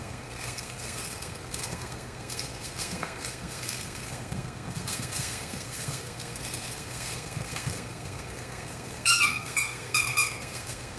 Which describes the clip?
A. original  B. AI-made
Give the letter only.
B